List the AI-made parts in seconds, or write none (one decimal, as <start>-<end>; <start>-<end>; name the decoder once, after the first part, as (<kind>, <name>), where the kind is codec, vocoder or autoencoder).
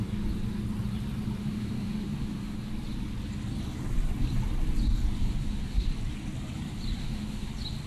1.4-2.7 (autoencoder, DAC-VAE); 5.2-5.9; 7.0-7.5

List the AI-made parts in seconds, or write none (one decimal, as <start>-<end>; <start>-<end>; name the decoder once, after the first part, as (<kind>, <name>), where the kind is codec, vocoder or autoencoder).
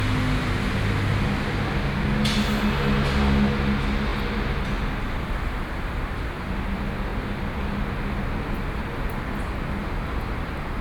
7.1-7.8 (vocoder, BigVGAN v2)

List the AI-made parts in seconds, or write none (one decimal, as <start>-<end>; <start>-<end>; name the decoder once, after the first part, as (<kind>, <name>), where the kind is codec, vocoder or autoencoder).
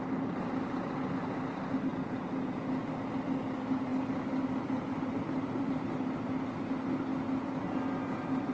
1.9-2.8 (vocoder, Vocos)